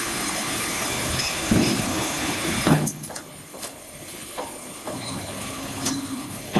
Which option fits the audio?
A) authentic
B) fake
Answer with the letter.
B